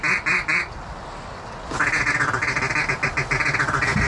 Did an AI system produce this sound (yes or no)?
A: no